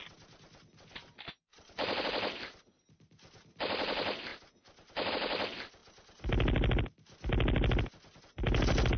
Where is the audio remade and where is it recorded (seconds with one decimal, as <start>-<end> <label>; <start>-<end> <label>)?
0.0-1.5 recorded; 1.5-2.0 remade; 2.0-9.0 recorded